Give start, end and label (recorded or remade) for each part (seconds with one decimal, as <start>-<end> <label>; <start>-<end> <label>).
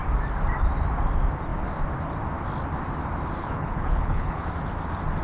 0.0-3.4 recorded; 3.4-4.5 remade; 4.5-5.2 recorded